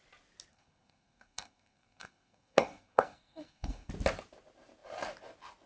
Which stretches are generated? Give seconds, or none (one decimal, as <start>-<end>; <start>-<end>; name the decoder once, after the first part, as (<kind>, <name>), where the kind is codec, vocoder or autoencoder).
0.5-3.9 (codec, SNAC)